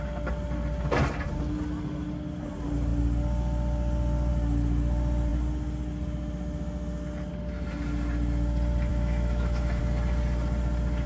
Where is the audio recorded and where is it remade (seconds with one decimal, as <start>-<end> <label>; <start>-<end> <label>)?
0.0-8.9 recorded; 8.9-9.8 remade; 9.8-11.1 recorded